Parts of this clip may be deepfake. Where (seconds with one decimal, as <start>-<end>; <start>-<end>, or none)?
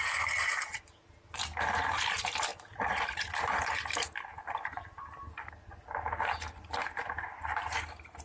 none